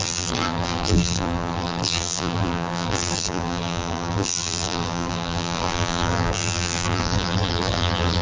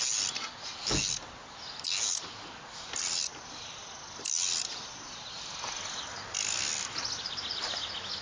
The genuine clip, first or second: second